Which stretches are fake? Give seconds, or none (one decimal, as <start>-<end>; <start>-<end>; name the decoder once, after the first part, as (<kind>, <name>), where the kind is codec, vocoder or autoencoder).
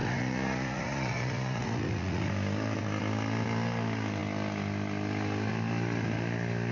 0.0-2.3 (vocoder, Vocos)